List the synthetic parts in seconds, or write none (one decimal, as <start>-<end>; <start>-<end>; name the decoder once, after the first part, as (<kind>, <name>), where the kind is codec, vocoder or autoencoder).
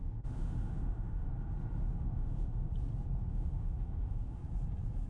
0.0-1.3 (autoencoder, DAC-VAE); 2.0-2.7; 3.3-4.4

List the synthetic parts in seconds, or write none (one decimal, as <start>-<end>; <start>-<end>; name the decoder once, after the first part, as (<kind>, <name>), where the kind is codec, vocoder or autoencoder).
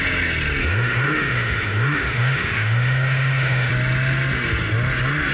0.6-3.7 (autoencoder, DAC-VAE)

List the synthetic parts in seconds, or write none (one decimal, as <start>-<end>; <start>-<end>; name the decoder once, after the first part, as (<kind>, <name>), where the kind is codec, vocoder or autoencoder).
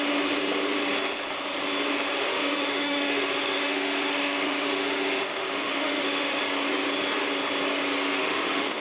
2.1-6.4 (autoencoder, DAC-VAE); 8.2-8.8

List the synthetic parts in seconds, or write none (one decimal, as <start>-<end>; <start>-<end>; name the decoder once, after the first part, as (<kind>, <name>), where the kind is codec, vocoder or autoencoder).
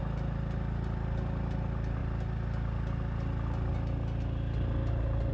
none